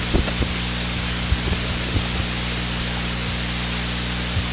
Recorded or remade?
recorded